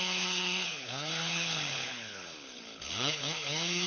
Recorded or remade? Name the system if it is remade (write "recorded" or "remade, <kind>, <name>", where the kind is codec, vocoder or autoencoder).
remade, codec, HILCodec